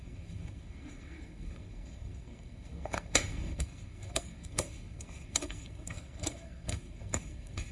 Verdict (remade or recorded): remade